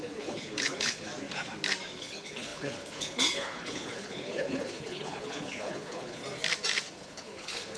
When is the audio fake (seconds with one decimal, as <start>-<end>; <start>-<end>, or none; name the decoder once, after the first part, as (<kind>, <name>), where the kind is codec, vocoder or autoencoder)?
0.0-1.1 (codec, HILCodec); 2.0-6.2; 6.9-7.8